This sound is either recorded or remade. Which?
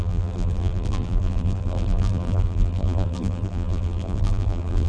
remade